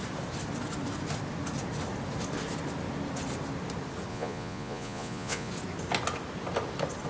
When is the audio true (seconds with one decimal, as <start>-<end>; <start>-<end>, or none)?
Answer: 0.0-4.1; 5.5-7.1